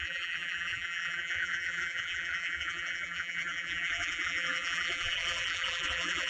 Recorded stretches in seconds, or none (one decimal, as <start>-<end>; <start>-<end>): none

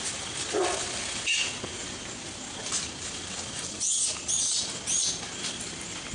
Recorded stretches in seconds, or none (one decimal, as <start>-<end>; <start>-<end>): 0.0-6.1

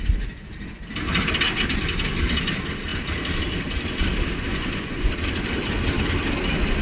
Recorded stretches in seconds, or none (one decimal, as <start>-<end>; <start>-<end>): 0.0-4.5; 5.1-6.8

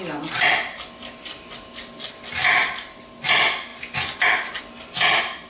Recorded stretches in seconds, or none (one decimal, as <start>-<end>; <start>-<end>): 0.0-5.5